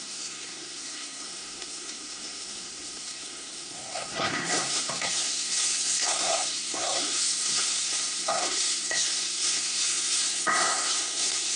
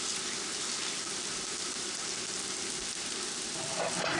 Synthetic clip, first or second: first